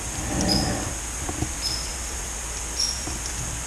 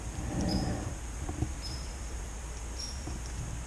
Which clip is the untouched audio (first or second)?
first